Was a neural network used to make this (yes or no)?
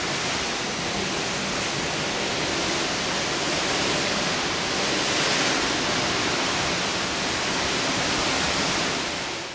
no